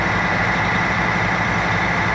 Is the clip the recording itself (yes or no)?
no